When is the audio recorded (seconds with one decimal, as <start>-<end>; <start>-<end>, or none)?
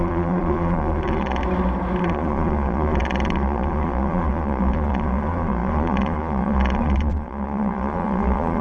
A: 1.4-2.0